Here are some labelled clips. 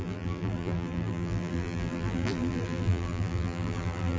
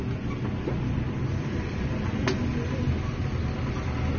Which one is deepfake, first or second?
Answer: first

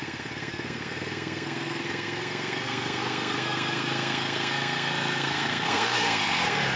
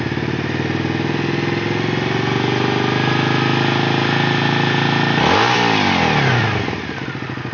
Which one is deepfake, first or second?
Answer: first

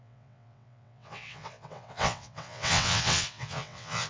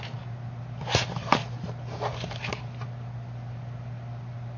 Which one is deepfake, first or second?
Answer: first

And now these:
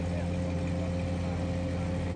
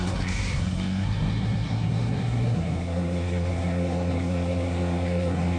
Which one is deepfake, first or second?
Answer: second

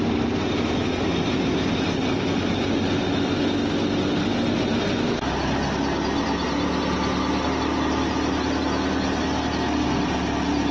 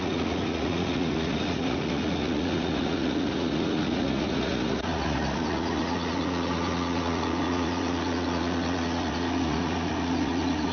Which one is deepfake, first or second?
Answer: second